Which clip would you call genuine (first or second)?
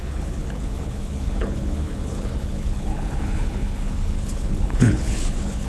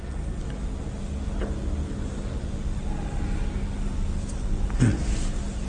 second